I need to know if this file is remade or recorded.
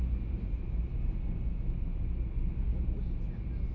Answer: recorded